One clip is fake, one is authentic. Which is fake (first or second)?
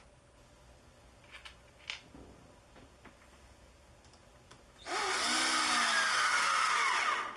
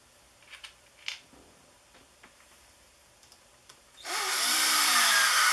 second